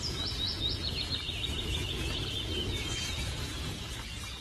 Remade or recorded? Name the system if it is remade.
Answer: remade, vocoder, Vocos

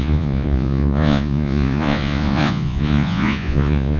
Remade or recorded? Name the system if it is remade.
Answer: remade, vocoder, Vocos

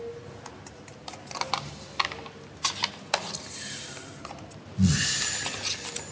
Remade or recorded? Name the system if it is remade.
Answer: recorded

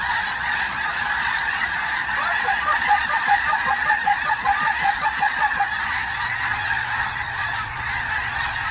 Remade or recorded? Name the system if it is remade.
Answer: remade, vocoder, Vocos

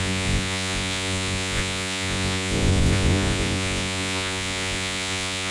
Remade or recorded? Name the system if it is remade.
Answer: remade, vocoder, Vocos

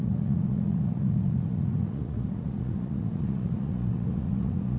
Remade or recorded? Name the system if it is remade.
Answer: remade, vocoder, Vocos